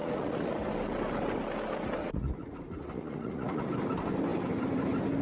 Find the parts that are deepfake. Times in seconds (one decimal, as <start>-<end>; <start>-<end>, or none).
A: 0.0-0.5; 2.0-3.7